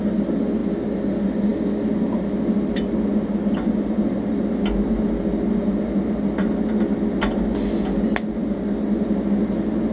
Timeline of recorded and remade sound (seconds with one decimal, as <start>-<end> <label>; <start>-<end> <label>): 0.0-9.9 recorded